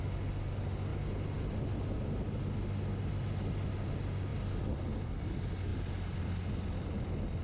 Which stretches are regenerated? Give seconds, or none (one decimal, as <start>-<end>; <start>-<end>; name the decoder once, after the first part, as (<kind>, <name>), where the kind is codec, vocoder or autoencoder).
none